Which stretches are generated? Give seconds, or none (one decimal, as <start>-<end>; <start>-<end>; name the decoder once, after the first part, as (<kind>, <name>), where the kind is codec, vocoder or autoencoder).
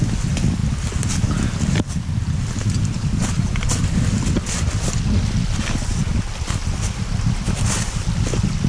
none